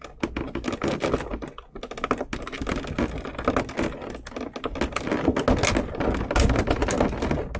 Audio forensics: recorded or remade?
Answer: recorded